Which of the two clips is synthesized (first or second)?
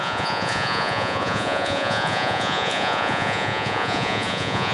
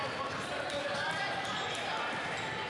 first